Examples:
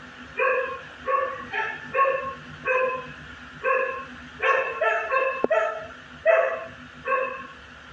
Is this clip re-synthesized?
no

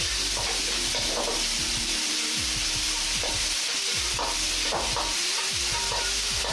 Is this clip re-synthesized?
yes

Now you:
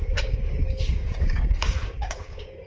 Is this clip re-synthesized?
yes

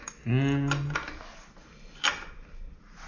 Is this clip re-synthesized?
no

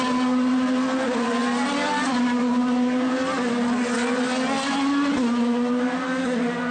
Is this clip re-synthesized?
no